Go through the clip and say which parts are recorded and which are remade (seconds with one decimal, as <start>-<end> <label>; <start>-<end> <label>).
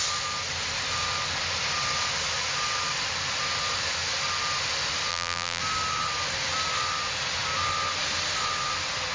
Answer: 0.0-5.1 recorded; 5.1-5.6 remade; 5.6-9.1 recorded